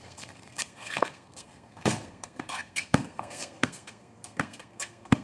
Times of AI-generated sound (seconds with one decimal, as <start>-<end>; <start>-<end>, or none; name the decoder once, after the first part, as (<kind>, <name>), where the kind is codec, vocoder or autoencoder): 0.0-5.2 (codec, SNAC)